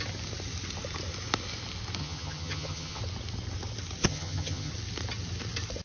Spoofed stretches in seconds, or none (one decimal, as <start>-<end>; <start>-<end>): 2.0-3.0; 4.0-4.7